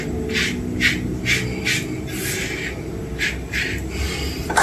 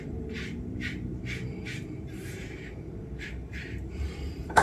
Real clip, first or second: first